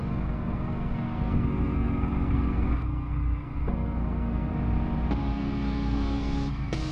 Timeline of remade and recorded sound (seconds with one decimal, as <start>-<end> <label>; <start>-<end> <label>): 0.0-4.5 remade; 4.5-5.2 recorded; 5.2-6.9 remade